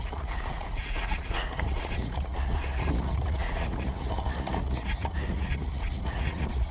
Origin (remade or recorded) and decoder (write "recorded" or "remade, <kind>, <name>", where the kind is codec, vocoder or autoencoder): remade, vocoder, Vocos